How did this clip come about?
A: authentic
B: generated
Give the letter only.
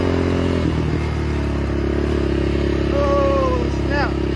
A